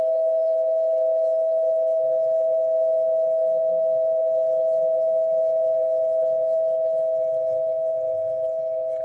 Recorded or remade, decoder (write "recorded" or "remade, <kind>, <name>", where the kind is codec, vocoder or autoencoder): remade, codec, HILCodec